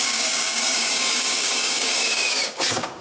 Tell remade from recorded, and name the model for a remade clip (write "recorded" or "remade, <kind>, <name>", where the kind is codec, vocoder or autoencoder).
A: remade, codec, DAC